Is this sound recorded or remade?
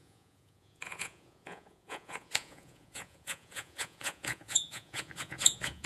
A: remade